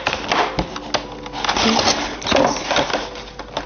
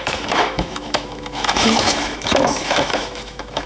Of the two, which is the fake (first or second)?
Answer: second